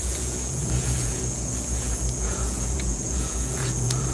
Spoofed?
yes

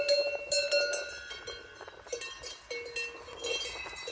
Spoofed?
no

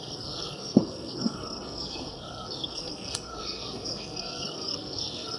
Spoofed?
yes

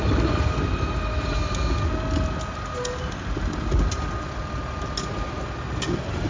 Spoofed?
no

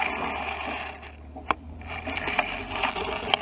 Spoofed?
no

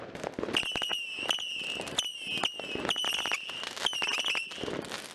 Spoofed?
no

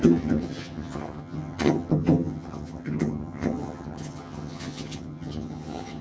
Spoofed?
yes